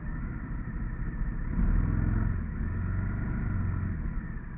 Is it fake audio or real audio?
real